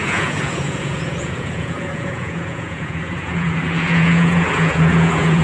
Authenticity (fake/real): fake